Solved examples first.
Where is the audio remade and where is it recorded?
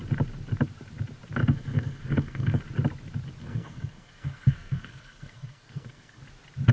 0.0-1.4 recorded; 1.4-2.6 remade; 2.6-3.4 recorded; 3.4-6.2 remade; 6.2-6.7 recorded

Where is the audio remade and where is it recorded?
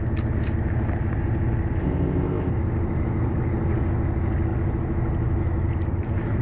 0.0-1.8 recorded; 1.8-2.5 remade; 2.5-6.4 recorded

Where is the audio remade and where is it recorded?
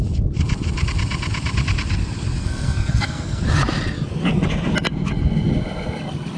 0.0-2.4 recorded; 2.4-3.4 remade; 3.4-6.4 recorded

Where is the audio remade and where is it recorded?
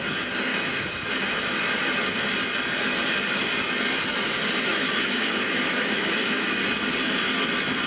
0.0-0.5 recorded; 0.5-1.1 remade; 1.1-4.7 recorded; 4.7-6.6 remade; 6.6-7.9 recorded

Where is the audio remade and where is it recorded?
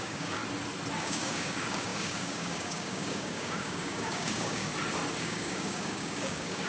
0.0-0.4 remade; 0.4-1.0 recorded; 1.0-4.7 remade; 4.7-5.2 recorded; 5.2-6.7 remade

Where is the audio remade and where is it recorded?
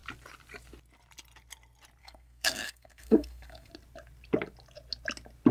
0.0-2.0 recorded; 2.0-3.7 remade; 3.7-5.5 recorded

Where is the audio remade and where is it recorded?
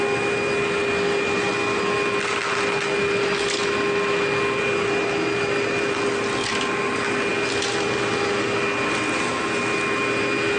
0.0-10.6 recorded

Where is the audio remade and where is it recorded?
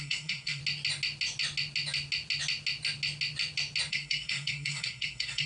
0.0-0.6 remade; 0.6-3.9 recorded; 3.9-5.5 remade